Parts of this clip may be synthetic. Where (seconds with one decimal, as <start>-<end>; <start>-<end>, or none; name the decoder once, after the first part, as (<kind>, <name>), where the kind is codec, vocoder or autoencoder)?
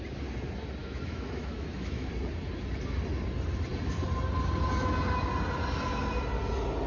0.8-2.1 (autoencoder, DAC-VAE)